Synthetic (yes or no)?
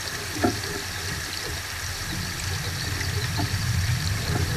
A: no